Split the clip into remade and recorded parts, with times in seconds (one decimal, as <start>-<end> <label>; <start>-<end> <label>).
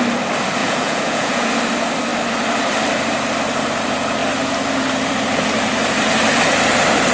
0.0-0.6 recorded; 0.6-1.5 remade; 1.5-7.1 recorded